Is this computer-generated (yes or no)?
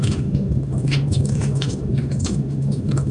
yes